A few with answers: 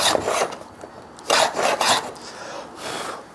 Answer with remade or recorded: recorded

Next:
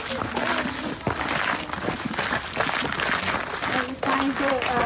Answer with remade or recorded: recorded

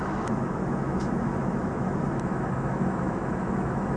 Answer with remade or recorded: remade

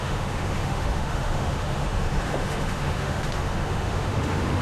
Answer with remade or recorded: remade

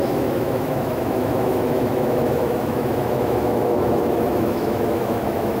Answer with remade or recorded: remade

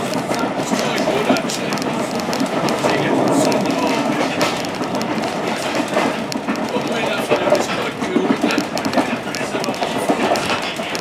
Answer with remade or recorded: recorded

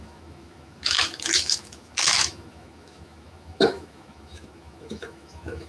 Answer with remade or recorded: remade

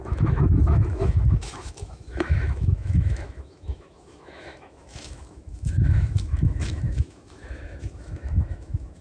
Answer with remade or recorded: remade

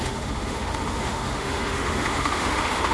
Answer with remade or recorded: remade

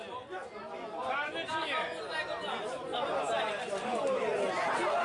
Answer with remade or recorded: recorded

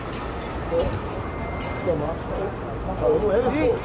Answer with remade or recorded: recorded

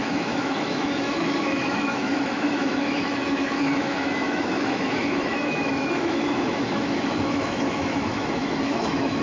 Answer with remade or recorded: remade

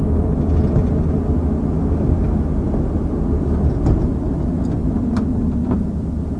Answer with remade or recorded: recorded